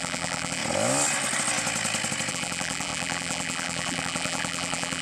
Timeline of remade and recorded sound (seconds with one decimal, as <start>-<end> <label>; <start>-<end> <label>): 0.0-0.6 remade; 0.6-2.3 recorded; 2.3-5.0 remade